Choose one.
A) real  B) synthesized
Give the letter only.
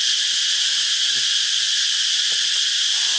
A